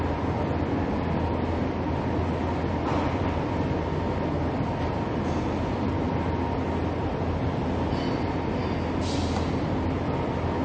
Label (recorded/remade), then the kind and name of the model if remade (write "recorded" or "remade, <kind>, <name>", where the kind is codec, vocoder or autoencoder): recorded